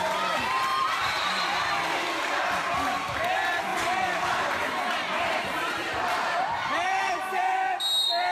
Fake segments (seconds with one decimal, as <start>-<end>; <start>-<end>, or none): 0.7-1.7; 3.7-7.1